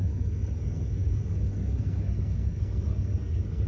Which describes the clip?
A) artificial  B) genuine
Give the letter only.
A